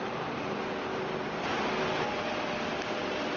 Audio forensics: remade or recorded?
recorded